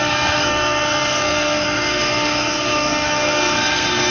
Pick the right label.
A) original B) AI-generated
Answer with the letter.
B